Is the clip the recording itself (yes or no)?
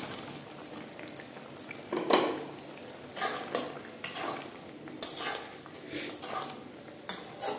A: yes